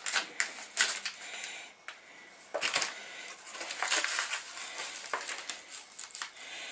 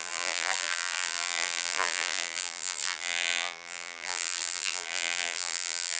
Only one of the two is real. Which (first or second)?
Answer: first